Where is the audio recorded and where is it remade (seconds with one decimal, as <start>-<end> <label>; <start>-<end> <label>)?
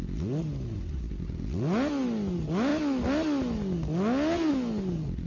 0.0-5.3 recorded